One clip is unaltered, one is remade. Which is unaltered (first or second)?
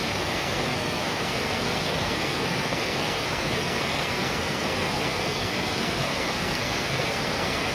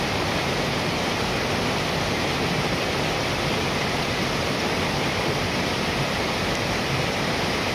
second